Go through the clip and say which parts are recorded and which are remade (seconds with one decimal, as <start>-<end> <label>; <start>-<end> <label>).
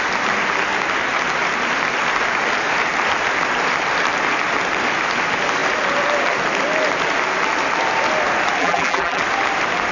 0.0-8.6 recorded; 8.6-9.2 remade; 9.2-9.9 recorded